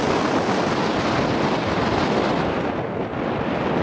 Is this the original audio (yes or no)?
yes